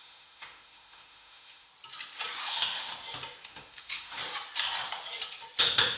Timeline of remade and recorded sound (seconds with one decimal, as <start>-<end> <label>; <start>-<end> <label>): 0.0-1.7 remade; 1.7-2.4 recorded; 2.4-2.9 remade; 2.9-3.5 recorded; 3.5-4.2 remade; 4.2-5.6 recorded; 5.6-6.0 remade